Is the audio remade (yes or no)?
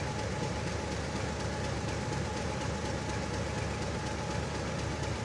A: no